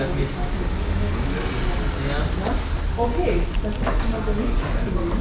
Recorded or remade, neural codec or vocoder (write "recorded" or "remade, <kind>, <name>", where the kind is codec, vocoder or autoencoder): recorded